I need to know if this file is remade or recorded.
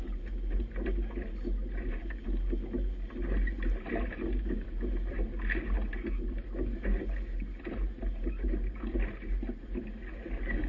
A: recorded